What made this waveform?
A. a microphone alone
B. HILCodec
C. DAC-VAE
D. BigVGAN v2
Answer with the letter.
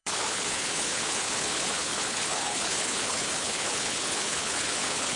B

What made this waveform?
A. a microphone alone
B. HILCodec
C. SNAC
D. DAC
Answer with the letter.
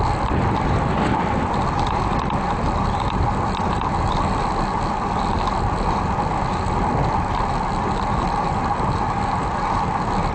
A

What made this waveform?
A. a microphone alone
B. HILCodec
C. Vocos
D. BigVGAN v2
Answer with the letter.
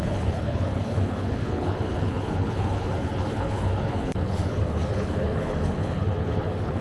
B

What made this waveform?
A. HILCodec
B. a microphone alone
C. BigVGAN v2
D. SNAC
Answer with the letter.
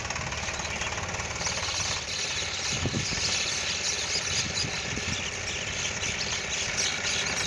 B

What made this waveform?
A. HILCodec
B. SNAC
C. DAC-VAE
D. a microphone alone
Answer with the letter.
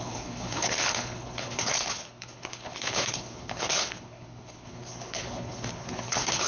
A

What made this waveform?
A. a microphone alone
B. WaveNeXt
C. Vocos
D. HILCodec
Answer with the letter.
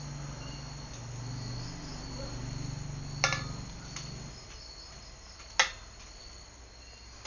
A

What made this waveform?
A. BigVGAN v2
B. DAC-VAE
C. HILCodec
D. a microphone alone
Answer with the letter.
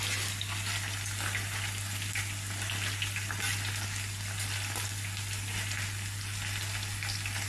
D